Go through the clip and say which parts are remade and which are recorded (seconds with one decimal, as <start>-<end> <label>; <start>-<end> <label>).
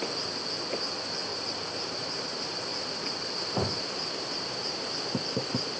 0.0-1.3 recorded; 1.3-2.2 remade; 2.2-2.7 recorded; 2.7-4.9 remade; 4.9-5.8 recorded